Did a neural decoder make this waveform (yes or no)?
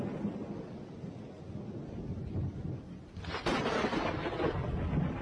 no